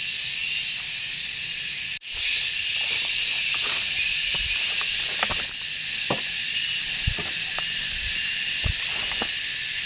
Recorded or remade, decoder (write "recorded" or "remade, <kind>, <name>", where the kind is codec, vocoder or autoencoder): recorded